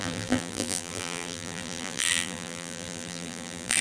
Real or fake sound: fake